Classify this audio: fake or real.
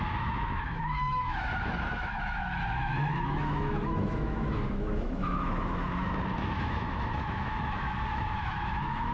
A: fake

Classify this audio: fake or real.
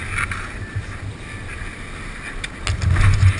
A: real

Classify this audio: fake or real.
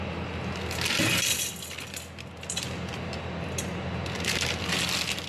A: real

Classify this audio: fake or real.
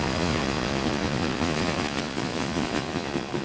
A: fake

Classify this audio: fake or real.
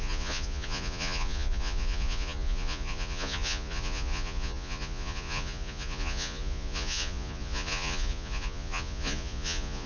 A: fake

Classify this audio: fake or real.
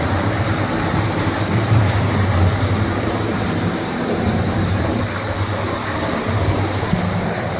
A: fake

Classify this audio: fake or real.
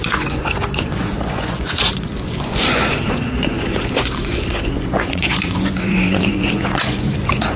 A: fake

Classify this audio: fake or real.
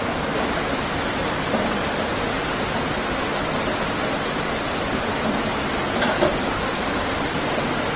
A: real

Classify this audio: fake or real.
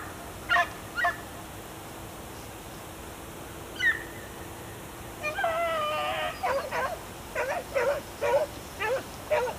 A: real